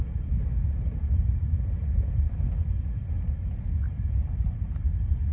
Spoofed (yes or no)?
no